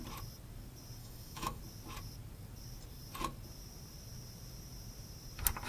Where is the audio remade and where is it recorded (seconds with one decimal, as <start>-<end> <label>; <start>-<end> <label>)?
0.0-1.0 recorded; 1.0-1.6 remade; 1.6-5.7 recorded